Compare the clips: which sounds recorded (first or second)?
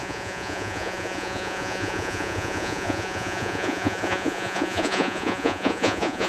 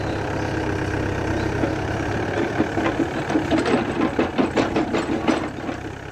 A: second